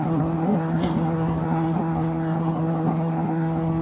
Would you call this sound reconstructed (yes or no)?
yes